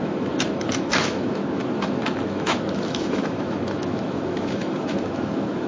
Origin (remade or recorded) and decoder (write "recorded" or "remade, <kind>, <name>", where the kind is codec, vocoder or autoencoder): remade, autoencoder, DAC-VAE